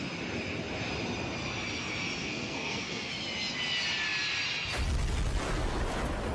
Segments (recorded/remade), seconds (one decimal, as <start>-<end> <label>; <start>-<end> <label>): 0.0-2.2 recorded; 2.2-3.1 remade; 3.1-6.3 recorded